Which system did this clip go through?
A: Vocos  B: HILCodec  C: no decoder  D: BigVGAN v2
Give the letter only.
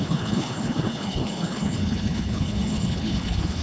B